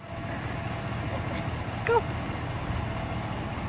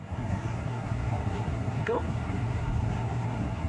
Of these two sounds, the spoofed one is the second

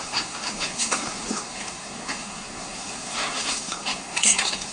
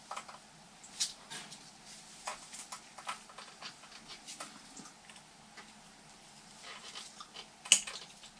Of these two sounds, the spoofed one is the first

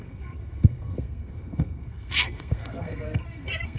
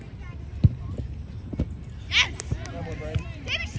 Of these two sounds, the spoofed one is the first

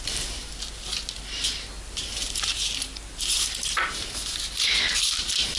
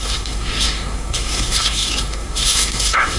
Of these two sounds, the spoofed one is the second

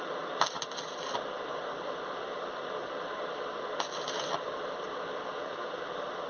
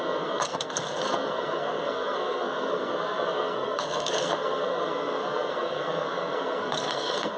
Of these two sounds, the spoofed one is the second